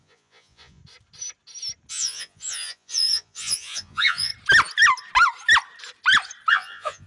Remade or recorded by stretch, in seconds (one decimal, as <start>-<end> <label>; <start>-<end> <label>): 0.0-0.8 remade; 0.8-1.9 recorded; 1.9-4.3 remade; 4.3-6.5 recorded; 6.5-7.1 remade